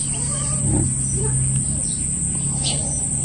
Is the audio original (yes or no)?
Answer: yes